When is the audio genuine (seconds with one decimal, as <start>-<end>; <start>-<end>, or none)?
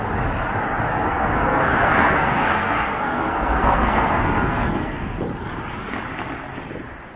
0.0-0.9; 5.2-7.2